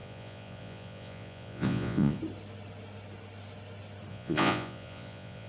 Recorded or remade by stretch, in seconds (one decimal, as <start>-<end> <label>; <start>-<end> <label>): 0.0-2.2 remade; 2.2-4.1 recorded; 4.1-5.5 remade